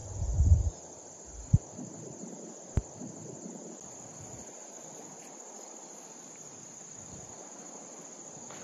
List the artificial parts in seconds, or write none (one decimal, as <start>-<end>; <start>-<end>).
none